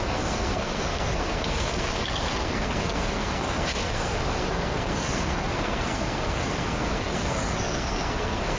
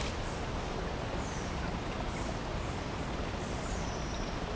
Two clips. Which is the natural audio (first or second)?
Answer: second